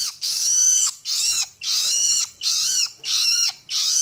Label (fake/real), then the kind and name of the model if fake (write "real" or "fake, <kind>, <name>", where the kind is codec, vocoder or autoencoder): fake, codec, DAC